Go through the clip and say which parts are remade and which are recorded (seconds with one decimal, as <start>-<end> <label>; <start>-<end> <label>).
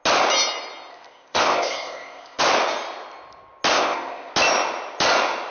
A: 0.0-0.9 recorded; 0.9-2.4 remade; 2.4-3.7 recorded; 3.7-4.3 remade; 4.3-5.5 recorded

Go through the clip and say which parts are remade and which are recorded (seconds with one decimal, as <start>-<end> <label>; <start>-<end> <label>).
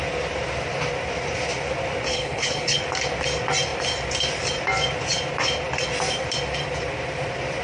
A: 0.0-2.1 recorded; 2.1-2.8 remade; 2.8-7.6 recorded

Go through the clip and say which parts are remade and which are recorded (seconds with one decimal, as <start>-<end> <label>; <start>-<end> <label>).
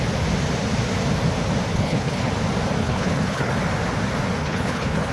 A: 0.0-1.7 recorded; 1.7-2.3 remade; 2.3-2.8 recorded; 2.8-3.5 remade; 3.5-4.4 recorded; 4.4-5.1 remade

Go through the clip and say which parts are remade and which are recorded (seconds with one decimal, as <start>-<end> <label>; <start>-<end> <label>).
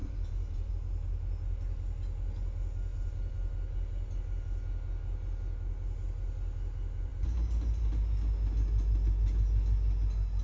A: 0.0-0.7 remade; 0.7-10.4 recorded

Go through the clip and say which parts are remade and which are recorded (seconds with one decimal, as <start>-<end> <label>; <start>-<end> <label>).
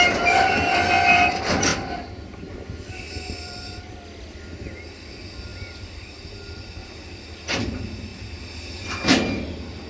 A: 0.0-5.5 recorded; 5.5-6.3 remade; 6.3-9.9 recorded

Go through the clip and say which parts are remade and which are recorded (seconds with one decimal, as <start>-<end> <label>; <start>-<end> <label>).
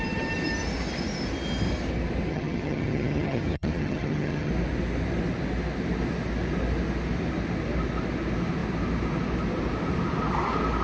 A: 0.0-2.3 recorded; 2.3-4.5 remade; 4.5-10.8 recorded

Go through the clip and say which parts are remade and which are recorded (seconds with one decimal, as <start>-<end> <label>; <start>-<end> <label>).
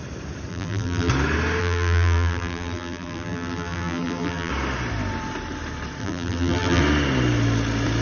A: 0.0-0.5 recorded; 0.5-1.1 remade; 1.1-1.6 recorded; 1.6-4.5 remade; 4.5-6.0 recorded; 6.0-6.8 remade; 6.8-8.0 recorded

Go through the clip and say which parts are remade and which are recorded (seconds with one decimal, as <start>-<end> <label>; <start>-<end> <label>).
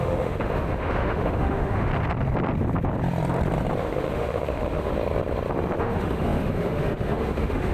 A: 0.0-1.9 remade; 1.9-3.8 recorded; 3.8-4.9 remade; 4.9-5.8 recorded; 5.8-7.7 remade